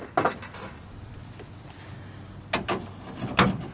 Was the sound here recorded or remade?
recorded